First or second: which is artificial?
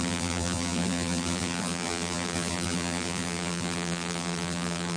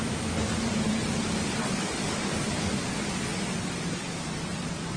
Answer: first